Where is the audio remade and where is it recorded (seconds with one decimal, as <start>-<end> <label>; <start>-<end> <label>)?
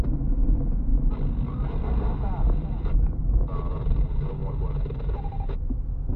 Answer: 0.0-4.4 recorded; 4.4-5.5 remade; 5.5-6.2 recorded